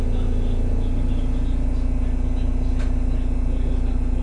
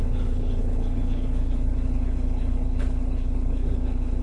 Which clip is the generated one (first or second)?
second